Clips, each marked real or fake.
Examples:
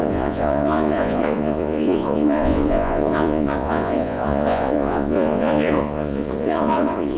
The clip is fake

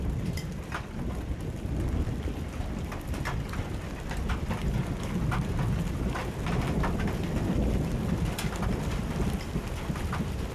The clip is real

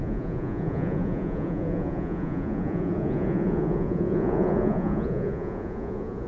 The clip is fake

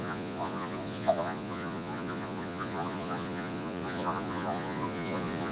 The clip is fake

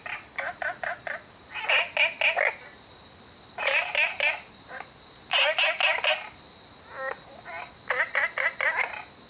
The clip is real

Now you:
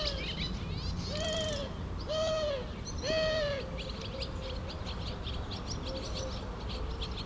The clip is real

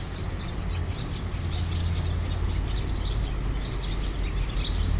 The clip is real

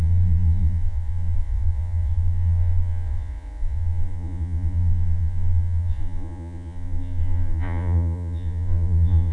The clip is fake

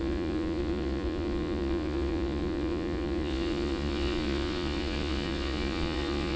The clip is fake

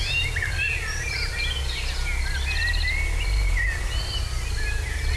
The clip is real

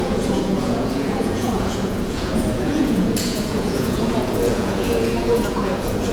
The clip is fake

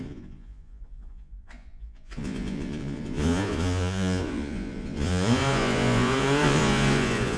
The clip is fake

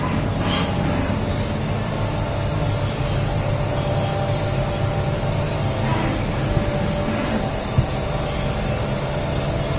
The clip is real